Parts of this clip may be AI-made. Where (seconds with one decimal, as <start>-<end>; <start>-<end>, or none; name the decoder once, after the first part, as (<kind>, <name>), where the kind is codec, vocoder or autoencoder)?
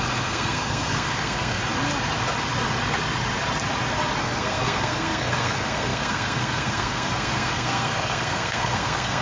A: 0.0-1.6 (codec, SNAC); 4.2-9.2